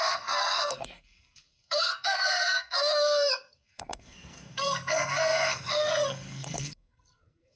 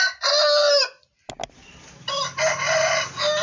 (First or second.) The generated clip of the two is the first